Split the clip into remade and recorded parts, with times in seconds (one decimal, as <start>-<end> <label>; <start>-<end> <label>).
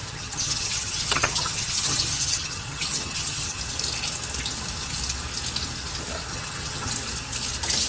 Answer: 0.0-3.6 remade; 3.6-6.3 recorded; 6.3-6.9 remade; 6.9-7.9 recorded